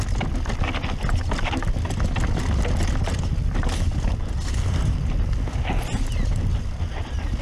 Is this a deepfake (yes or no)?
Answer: no